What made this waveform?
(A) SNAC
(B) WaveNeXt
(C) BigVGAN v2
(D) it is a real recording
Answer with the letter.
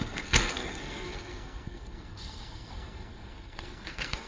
A